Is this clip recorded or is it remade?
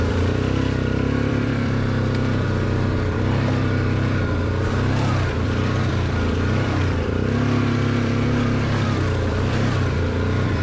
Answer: remade